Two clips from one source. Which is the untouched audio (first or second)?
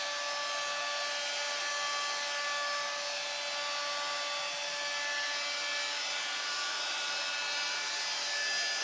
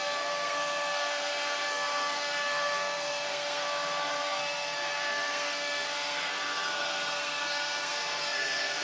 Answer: first